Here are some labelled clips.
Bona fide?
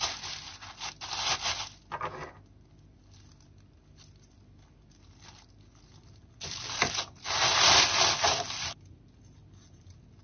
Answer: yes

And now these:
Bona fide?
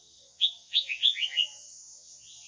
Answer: no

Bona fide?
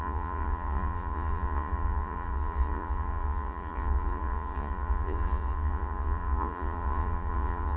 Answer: no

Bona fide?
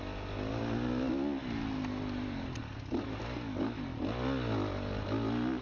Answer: yes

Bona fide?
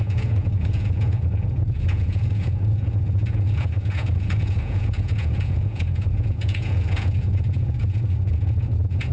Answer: no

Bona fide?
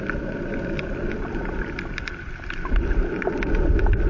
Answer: yes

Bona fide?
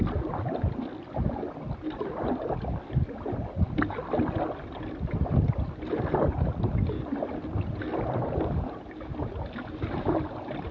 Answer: yes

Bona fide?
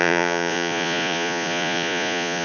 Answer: no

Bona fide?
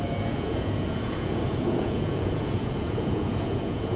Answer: no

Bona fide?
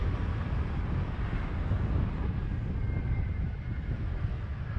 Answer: yes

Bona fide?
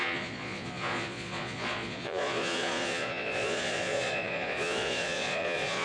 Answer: no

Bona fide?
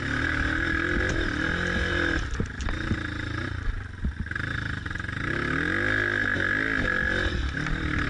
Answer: yes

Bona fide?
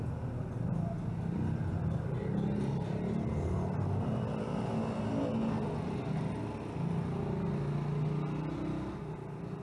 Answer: yes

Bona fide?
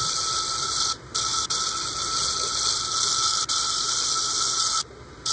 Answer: yes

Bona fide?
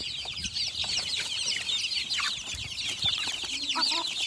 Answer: yes